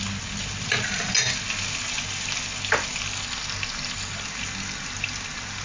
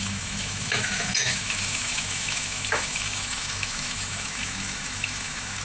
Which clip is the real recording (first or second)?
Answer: first